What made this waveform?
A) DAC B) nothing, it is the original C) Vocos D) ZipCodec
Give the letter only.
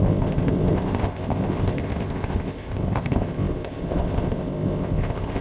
D